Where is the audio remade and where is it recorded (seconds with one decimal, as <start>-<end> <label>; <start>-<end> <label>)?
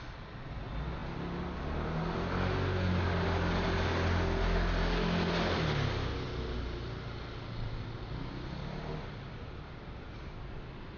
0.0-11.0 recorded